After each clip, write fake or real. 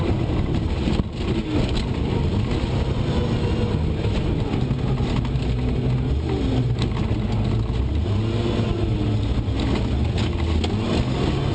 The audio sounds real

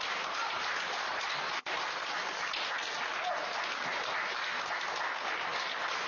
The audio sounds real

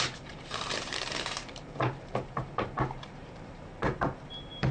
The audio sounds fake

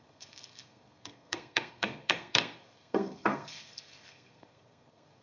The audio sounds fake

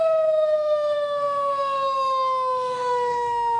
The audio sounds fake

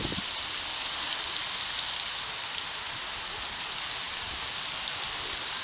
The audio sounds real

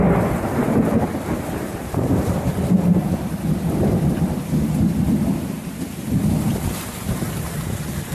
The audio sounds fake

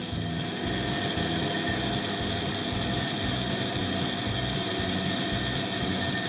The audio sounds real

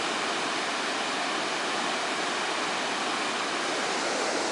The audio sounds real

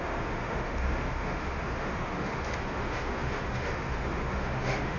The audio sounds fake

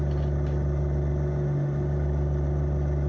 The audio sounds real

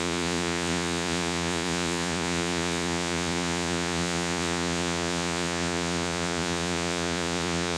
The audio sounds fake